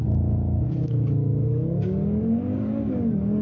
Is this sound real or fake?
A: fake